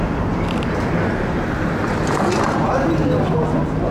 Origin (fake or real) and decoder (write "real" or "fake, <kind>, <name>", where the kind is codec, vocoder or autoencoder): real